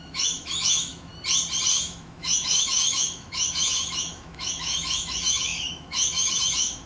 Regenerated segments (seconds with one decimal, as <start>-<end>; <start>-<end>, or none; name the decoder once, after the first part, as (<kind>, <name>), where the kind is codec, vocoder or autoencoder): 0.0-1.1 (autoencoder, DAC-VAE); 1.7-6.9